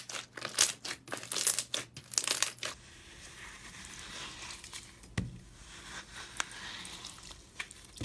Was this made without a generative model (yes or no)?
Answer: yes